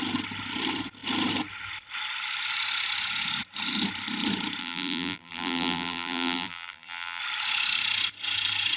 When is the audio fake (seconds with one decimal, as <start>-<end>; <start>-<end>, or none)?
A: 4.6-7.2